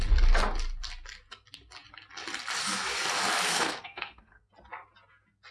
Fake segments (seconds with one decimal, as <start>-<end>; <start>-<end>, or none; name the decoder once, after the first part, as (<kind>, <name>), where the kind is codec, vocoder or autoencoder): 3.5-4.5 (codec, SNAC)